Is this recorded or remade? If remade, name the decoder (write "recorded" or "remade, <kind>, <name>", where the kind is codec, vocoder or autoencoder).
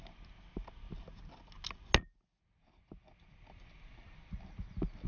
recorded